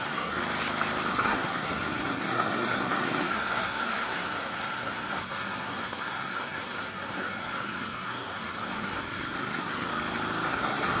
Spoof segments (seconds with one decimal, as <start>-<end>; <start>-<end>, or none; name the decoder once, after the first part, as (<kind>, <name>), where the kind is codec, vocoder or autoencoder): 0.0-0.4 (codec, SNAC); 1.1-9.9; 10.5-11.0